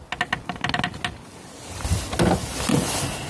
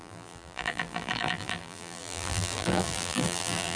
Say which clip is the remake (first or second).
second